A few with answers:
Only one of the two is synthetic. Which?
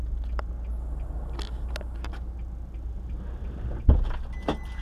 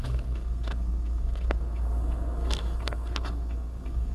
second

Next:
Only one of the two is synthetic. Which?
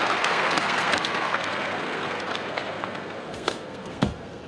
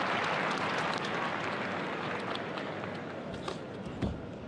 first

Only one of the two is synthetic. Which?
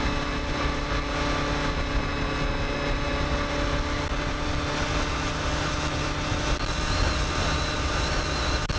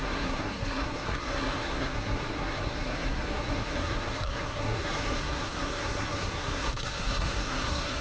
second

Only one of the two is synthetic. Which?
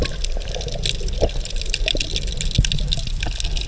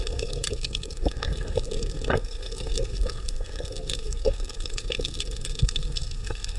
second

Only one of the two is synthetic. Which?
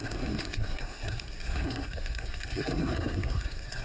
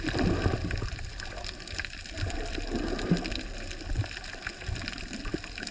first